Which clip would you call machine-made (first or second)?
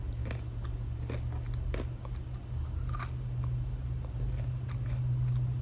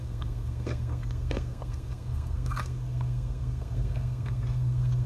second